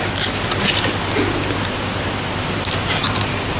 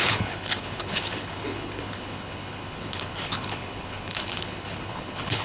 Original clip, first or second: first